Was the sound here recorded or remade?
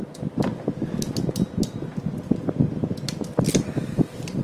recorded